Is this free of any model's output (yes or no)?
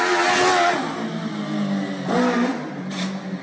yes